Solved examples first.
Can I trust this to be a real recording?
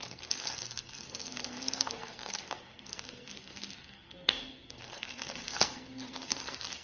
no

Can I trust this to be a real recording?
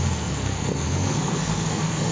no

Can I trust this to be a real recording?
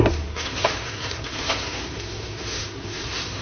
no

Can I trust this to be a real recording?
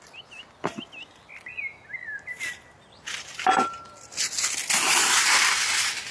yes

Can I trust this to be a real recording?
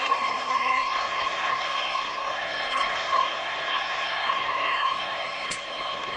no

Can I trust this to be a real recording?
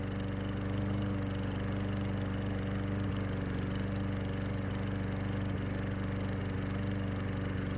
yes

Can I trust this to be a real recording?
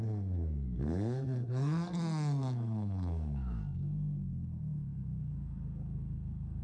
no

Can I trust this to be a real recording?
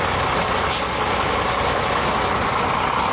yes